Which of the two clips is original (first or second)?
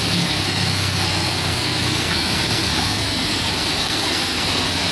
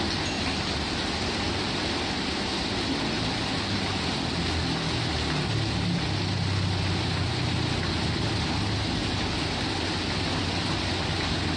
second